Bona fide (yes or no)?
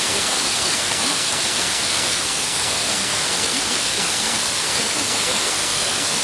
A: no